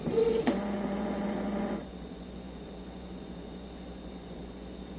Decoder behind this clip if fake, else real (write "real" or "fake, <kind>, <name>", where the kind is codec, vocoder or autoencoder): fake, vocoder, Vocos